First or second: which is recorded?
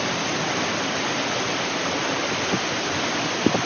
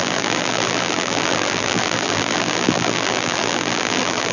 first